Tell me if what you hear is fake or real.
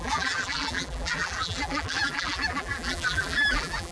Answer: fake